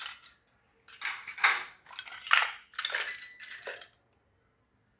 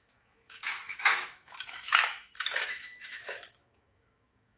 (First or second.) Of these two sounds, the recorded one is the first